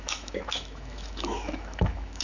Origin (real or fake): fake